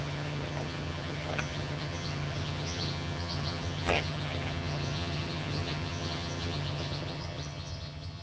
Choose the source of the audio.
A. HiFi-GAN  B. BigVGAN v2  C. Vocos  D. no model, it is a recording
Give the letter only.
A